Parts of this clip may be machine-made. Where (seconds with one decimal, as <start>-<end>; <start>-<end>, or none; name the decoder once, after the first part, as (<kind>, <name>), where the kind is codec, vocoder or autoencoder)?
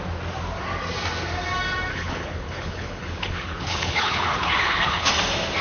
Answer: 1.9-5.1 (codec, HILCodec)